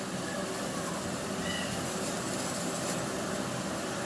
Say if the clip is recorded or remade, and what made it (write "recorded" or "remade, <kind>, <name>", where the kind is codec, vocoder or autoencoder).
remade, vocoder, BigVGAN v2